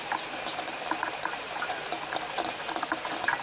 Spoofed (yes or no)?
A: no